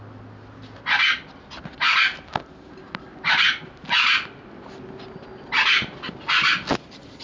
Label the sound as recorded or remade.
recorded